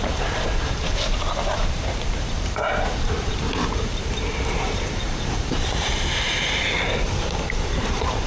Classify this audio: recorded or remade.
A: remade